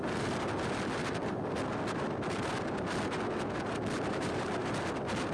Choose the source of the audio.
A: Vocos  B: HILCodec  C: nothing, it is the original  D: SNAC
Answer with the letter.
C